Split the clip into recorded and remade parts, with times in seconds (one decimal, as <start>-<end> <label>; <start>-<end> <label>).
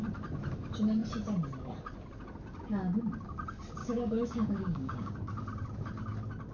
0.0-3.8 recorded; 3.8-5.2 remade; 5.2-6.5 recorded